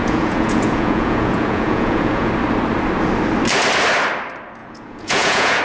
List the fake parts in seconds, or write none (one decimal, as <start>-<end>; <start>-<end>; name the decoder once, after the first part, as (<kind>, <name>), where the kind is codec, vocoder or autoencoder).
0.0-2.3 (vocoder, Vocos); 4.6-5.6